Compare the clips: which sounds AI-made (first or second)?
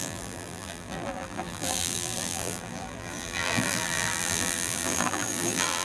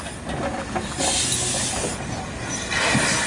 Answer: first